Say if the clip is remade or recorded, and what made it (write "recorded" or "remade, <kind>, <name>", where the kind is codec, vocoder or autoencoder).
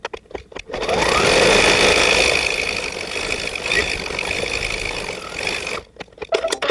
recorded